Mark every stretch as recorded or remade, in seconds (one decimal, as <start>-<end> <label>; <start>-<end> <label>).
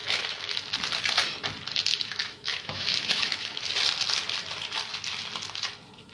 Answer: 0.0-0.7 remade; 0.7-1.9 recorded; 1.9-3.7 remade; 3.7-6.1 recorded